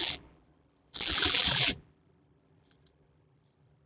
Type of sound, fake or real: fake